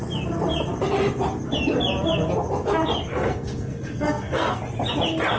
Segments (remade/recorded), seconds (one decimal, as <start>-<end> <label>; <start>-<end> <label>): 0.0-3.1 recorded; 3.1-4.6 remade; 4.6-5.4 recorded